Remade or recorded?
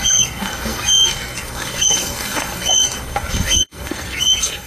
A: remade